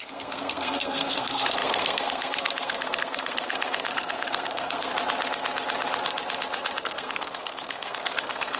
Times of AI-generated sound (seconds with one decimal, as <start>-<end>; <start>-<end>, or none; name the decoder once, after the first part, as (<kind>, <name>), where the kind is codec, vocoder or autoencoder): 0.0-4.9 (codec, SNAC); 6.8-8.6